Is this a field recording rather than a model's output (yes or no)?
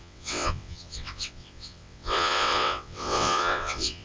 no